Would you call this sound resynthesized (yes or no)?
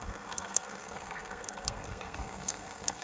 yes